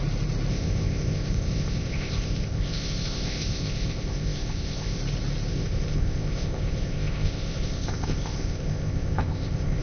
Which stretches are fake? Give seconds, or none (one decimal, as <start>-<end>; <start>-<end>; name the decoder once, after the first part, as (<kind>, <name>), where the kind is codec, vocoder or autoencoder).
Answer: 0.5-5.0 (codec, ZipCodec); 5.5-9.8